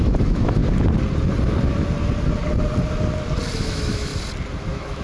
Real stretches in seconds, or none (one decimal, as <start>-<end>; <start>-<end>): 0.6-3.6; 4.1-4.6

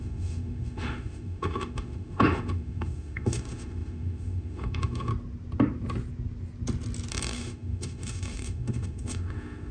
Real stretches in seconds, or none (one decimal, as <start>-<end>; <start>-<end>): 5.1-7.1

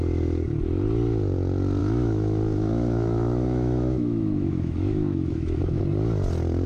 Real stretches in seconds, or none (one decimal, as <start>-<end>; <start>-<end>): 0.0-1.8; 5.8-6.7

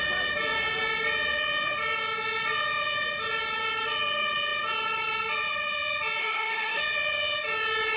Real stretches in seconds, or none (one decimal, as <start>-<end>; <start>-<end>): 0.0-6.2; 6.8-8.0

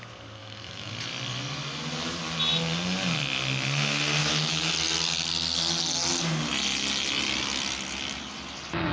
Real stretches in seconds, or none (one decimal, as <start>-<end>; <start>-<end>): 0.0-0.4; 0.9-4.2; 4.7-8.9